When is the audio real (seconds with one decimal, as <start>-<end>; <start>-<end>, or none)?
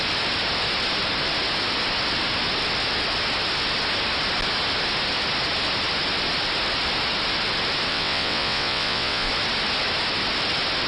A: 0.0-7.9; 9.3-10.9